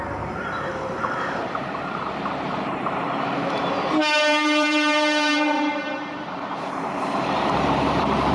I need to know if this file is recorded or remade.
remade